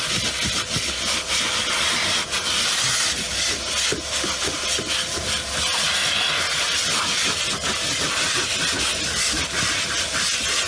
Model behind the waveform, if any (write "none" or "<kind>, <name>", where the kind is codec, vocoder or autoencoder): none